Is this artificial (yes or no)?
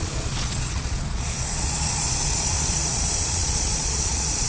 yes